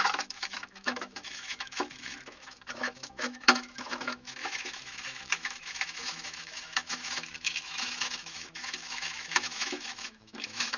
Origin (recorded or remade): remade